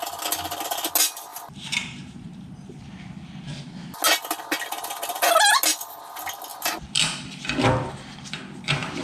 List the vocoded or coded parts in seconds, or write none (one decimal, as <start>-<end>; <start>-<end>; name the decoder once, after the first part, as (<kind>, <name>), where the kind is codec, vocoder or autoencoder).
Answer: 1.3-2.9 (vocoder, BigVGAN v2)